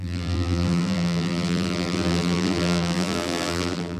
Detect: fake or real fake